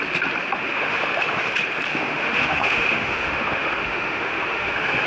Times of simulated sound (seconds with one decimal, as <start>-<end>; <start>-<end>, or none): 0.6-1.5; 1.9-5.1